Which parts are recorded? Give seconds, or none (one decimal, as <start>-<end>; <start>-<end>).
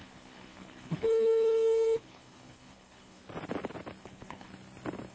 3.2-4.0; 4.5-5.1